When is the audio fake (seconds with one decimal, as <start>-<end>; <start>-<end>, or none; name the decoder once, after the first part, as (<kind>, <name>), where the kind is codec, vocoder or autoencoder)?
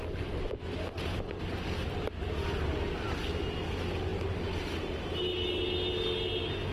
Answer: none